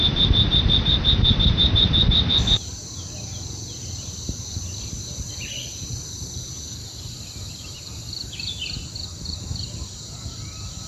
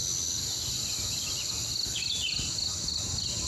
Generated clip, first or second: first